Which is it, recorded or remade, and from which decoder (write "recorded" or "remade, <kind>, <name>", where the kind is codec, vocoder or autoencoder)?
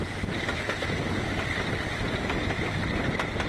recorded